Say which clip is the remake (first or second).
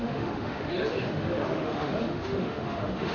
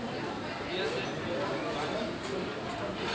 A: first